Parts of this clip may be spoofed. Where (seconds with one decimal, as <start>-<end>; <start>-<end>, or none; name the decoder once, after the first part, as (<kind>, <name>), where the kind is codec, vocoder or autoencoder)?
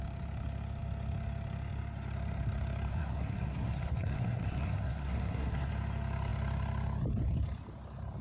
2.9-5.7 (codec, SNAC)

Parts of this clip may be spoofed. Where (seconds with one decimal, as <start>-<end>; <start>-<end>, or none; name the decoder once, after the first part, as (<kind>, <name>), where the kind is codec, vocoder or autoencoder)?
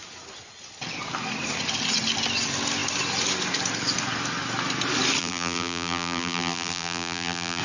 5.2-7.6 (vocoder, BigVGAN v2)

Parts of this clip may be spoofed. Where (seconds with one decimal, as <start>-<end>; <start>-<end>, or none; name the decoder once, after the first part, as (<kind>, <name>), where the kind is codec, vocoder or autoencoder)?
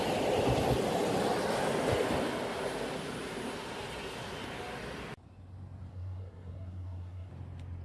5.9-7.3 (codec, SNAC)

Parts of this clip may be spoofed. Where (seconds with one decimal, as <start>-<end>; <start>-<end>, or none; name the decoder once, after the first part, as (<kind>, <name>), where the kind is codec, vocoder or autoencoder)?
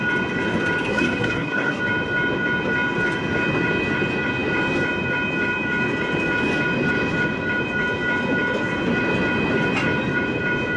0.9-1.8 (codec, SNAC)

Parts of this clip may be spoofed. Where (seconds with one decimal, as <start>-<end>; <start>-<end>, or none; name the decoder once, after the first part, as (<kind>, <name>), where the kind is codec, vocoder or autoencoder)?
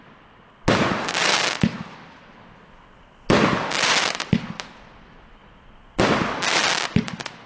none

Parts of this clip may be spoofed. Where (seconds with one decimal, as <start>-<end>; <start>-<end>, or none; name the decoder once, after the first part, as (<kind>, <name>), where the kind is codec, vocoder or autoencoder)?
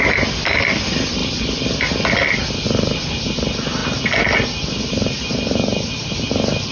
1.2-1.8 (vocoder, BigVGAN v2)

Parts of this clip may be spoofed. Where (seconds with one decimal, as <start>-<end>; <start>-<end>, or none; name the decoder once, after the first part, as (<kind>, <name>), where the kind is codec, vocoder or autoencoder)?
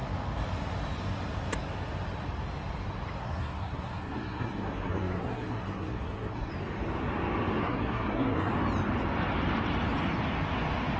3.2-6.5 (codec, SNAC); 7.6-8.5